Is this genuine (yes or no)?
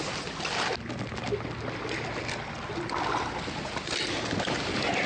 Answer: yes